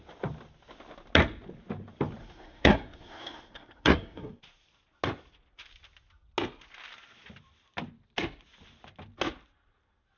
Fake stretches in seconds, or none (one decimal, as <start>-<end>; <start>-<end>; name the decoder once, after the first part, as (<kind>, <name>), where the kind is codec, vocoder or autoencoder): 2.2-4.4 (codec, SNAC)